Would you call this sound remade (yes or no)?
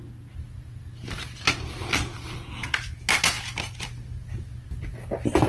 no